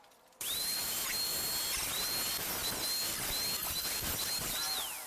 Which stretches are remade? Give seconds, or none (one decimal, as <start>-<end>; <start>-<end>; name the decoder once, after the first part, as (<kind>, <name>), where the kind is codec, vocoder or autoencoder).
0.0-1.3 (vocoder, BigVGAN v2); 3.8-5.1